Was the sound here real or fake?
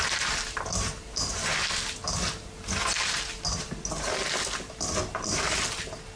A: real